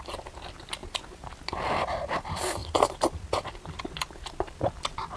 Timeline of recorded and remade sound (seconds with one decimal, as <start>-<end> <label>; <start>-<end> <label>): 0.0-0.8 remade; 0.8-1.6 recorded; 1.6-5.2 remade